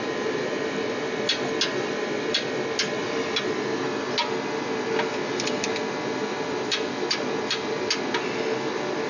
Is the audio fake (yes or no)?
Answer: no